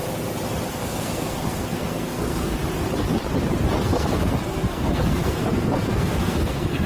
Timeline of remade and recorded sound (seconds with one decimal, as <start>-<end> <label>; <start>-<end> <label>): 0.0-0.7 recorded; 0.7-2.6 remade; 2.6-3.8 recorded; 3.8-6.9 remade